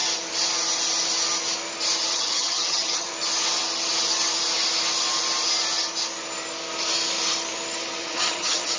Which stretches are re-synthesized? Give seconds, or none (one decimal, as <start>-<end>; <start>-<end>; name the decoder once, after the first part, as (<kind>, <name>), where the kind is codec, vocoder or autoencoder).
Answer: 2.1-3.1 (vocoder, HiFi-GAN); 8.0-8.8